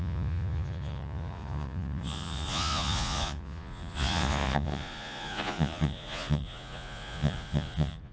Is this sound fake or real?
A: fake